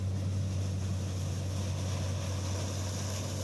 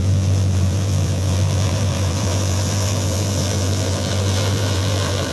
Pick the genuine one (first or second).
first